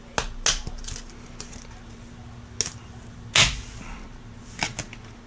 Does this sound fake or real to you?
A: real